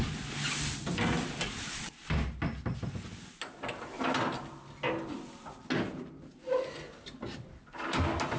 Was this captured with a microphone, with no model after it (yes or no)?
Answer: yes